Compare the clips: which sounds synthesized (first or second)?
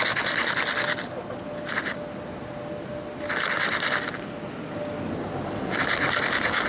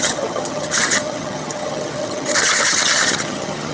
second